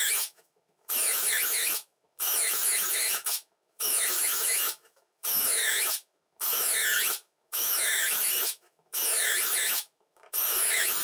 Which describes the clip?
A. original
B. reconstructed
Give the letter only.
B